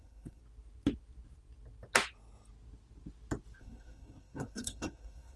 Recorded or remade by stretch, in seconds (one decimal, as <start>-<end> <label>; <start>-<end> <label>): 0.0-0.4 remade; 0.4-3.6 recorded; 3.6-5.4 remade